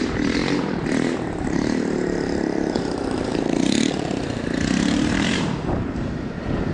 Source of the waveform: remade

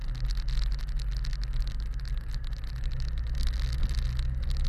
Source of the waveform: recorded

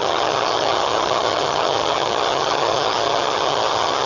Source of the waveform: remade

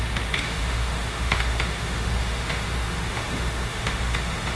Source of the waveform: remade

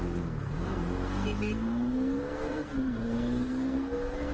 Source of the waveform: remade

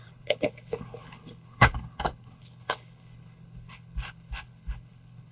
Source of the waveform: remade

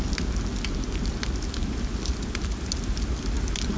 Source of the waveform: recorded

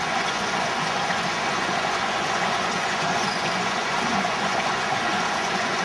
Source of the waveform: remade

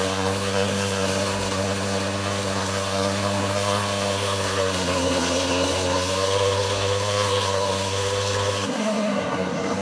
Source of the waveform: remade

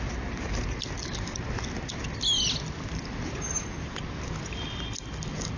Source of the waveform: recorded